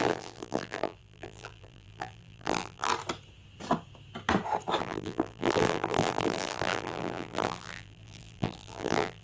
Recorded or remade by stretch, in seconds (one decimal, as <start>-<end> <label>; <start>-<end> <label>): 0.0-2.9 remade; 2.9-4.8 recorded; 4.8-9.2 remade